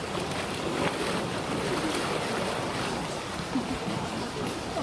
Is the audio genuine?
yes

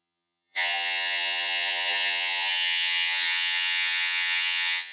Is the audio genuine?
no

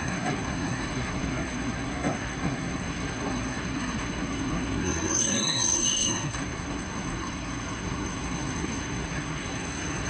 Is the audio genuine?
no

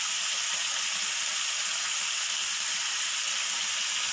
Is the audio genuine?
yes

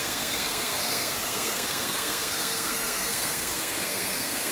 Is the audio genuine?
no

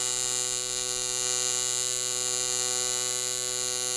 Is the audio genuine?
yes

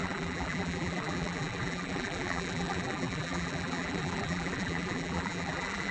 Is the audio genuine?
no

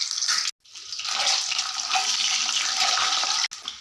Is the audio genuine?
yes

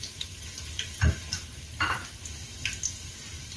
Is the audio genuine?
yes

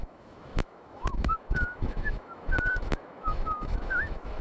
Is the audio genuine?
no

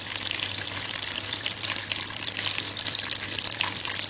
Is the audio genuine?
no